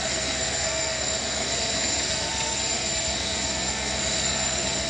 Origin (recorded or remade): remade